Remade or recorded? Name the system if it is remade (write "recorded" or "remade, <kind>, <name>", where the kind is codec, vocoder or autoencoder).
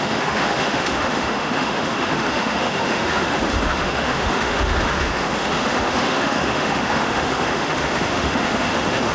remade, autoencoder, DAC-VAE